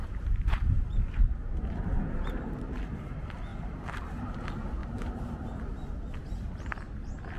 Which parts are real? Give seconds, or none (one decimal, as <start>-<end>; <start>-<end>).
2.4-3.5; 4.3-4.8; 5.6-7.4